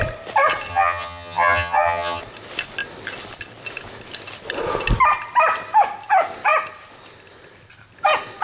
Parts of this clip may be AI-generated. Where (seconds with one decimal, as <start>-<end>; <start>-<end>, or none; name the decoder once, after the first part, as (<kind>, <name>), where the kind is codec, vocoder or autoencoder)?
0.7-2.2 (vocoder, HiFi-GAN)